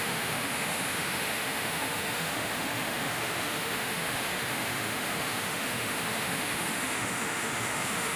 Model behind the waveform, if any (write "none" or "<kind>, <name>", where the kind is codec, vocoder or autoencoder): autoencoder, DAC-VAE